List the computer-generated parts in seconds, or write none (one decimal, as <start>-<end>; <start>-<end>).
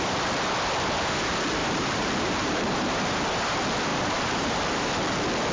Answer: 1.6-3.2; 3.9-4.9